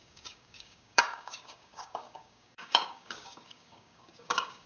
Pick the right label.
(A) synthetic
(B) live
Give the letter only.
A